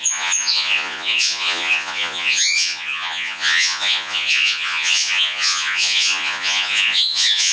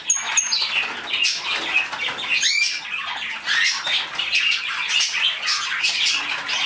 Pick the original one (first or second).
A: second